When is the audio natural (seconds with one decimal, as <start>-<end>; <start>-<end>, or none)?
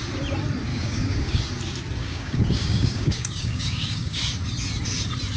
0.0-0.7; 1.4-2.0; 4.2-5.4